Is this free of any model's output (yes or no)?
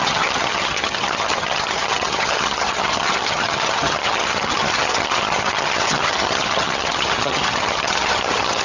no